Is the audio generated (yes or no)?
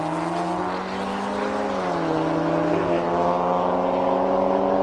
no